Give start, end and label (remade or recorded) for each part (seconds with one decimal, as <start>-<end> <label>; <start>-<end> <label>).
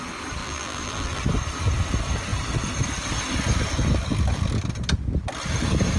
0.0-0.4 recorded; 0.4-1.2 remade; 1.2-6.0 recorded